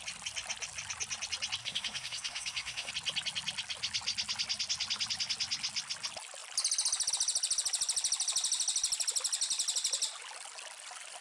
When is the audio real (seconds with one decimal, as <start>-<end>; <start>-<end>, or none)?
0.0-1.6; 2.9-11.2